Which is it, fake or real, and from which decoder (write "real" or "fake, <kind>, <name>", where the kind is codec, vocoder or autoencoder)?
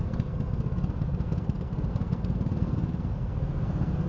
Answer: fake, codec, SNAC